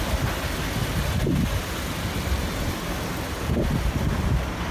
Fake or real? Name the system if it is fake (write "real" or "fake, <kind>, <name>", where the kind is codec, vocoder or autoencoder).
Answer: real